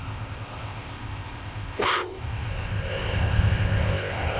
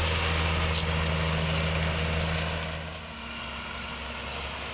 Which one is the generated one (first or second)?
first